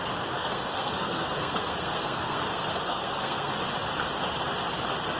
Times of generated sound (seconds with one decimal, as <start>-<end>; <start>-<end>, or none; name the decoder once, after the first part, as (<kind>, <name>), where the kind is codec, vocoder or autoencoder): 0.4-3.5 (codec, SNAC)